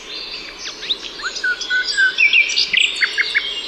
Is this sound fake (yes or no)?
no